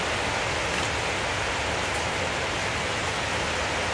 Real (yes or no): yes